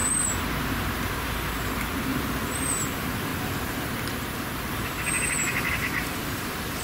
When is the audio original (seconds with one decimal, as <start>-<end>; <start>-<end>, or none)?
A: 0.0-0.6; 3.3-5.7